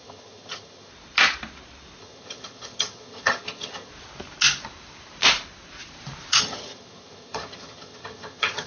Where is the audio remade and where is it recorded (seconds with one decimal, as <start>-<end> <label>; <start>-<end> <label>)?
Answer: 0.0-0.9 remade; 0.9-2.0 recorded; 2.0-3.9 remade; 3.9-6.4 recorded; 6.4-8.7 remade